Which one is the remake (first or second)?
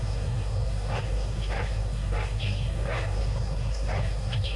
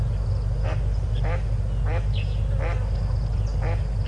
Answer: first